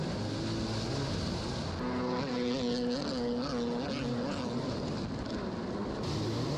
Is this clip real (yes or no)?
yes